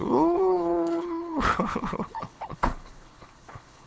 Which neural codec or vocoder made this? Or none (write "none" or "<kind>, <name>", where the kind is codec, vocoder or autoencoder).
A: codec, HILCodec